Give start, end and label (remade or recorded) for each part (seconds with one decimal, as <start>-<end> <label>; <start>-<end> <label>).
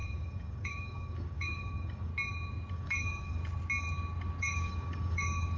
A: 0.0-2.1 remade; 2.1-2.7 recorded; 2.7-3.4 remade; 3.4-4.4 recorded; 4.4-5.6 remade